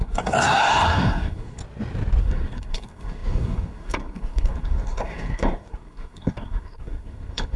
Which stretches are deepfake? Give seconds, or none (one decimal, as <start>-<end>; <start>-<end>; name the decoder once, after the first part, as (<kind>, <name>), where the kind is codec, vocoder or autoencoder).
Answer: 0.0-1.6 (codec, SNAC); 2.2-7.6